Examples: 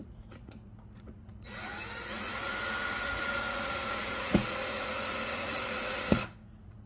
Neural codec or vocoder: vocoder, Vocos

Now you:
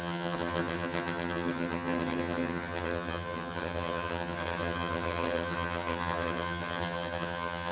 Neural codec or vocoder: vocoder, HiFi-GAN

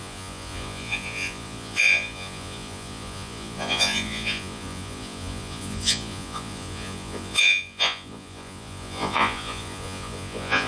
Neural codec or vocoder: vocoder, Vocos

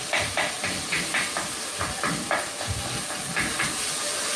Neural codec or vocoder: none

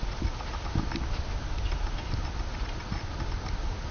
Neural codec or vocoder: none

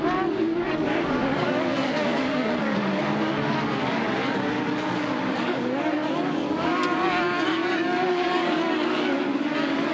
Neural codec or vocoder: codec, DAC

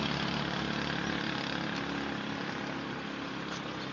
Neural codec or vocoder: none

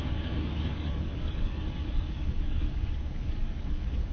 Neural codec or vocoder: codec, DAC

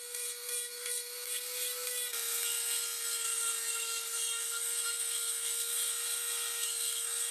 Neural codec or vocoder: codec, SNAC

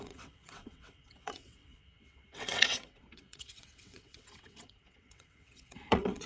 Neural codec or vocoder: vocoder, WaveNeXt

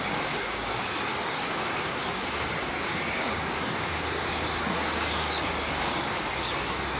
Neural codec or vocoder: codec, DAC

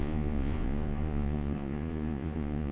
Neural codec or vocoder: vocoder, Vocos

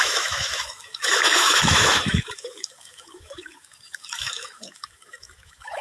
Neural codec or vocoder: autoencoder, DAC-VAE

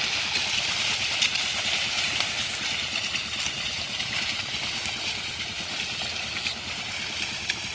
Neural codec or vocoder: none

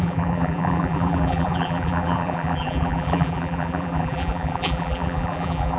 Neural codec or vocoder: vocoder, BigVGAN v2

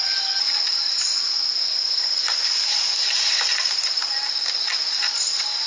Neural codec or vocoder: none